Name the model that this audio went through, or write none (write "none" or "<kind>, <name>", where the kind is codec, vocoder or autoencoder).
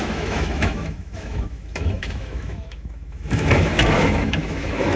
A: autoencoder, DAC-VAE